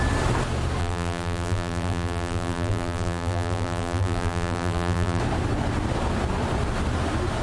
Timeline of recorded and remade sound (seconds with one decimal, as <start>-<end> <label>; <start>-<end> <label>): 0.0-0.8 recorded; 0.8-5.2 remade; 5.2-7.4 recorded